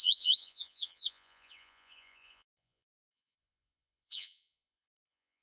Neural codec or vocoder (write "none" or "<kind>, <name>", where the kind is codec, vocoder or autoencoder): vocoder, Vocos